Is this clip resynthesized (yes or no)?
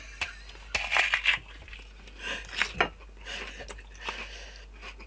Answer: no